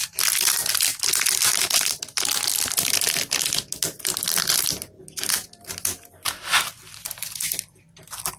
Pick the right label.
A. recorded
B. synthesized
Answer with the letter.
A